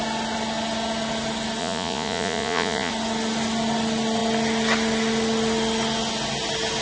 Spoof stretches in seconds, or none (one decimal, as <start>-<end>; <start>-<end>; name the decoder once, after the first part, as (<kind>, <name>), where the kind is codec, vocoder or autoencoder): 1.6-2.9 (vocoder, Vocos)